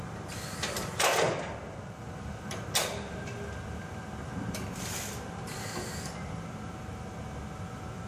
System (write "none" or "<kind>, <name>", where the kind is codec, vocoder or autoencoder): none